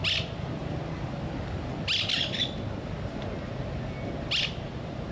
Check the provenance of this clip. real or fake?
real